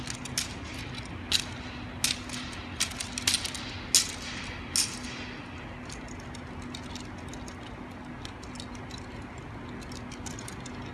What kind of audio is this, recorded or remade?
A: recorded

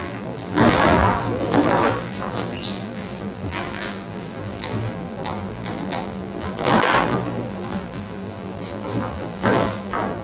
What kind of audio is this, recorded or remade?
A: remade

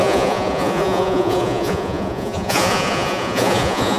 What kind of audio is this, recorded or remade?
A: remade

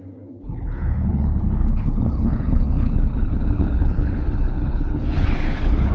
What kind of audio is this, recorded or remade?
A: remade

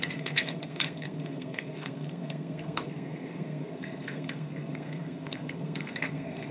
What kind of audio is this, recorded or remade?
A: remade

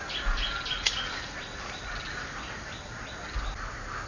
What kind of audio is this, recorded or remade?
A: recorded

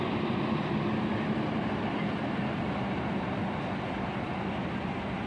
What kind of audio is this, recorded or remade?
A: remade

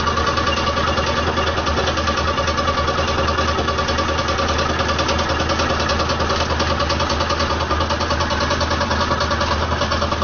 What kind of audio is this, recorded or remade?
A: recorded